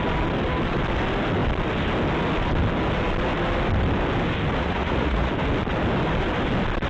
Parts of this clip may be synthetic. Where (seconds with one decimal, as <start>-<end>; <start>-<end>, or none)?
4.6-5.3